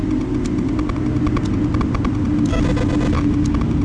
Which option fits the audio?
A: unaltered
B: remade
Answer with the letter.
A